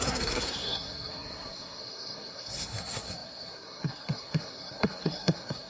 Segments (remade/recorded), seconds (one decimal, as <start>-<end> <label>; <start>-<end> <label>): 0.0-5.7 remade